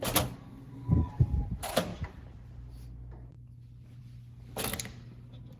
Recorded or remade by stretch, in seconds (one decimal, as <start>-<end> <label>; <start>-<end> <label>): 0.0-0.4 recorded; 0.4-1.1 remade; 1.1-5.6 recorded